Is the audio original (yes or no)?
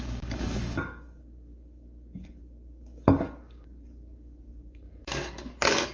no